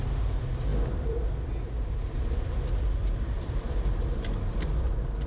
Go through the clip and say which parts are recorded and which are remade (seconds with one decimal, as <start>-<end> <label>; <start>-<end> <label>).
0.0-0.7 recorded; 0.7-3.9 remade; 3.9-5.3 recorded